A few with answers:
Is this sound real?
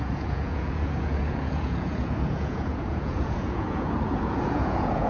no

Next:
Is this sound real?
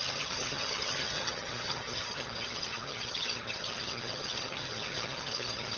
no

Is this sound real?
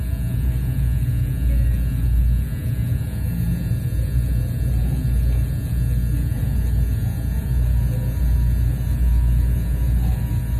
yes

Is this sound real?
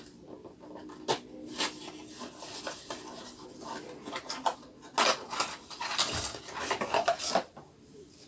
yes